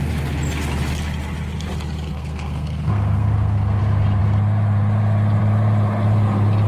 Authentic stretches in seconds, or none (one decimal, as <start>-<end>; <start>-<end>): 0.0-2.1; 3.8-6.7

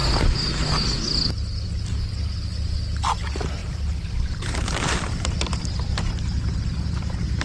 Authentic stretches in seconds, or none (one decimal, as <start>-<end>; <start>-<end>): 0.0-3.6; 5.7-7.4

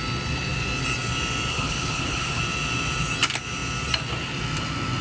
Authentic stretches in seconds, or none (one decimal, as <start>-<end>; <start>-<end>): 0.0-1.5; 2.4-5.0

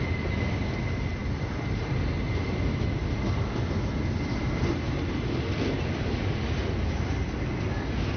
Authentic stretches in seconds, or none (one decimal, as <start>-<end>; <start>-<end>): 0.0-8.2

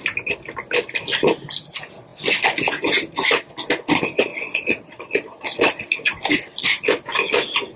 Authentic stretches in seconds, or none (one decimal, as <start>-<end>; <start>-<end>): 0.0-4.3; 6.2-7.8

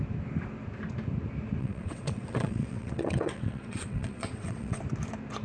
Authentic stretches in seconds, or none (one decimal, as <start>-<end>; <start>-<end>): 0.0-1.6; 4.8-5.4